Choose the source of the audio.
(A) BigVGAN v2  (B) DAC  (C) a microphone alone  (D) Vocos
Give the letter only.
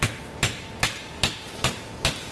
C